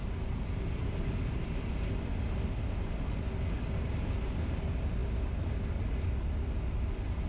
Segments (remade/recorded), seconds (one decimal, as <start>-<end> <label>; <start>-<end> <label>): 0.0-7.3 recorded